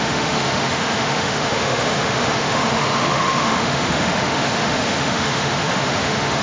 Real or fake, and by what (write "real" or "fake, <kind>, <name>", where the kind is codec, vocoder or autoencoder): fake, autoencoder, DAC-VAE